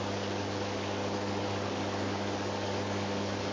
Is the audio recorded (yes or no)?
no